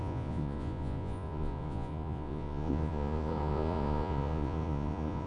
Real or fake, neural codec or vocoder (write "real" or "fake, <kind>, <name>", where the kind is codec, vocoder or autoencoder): fake, vocoder, Vocos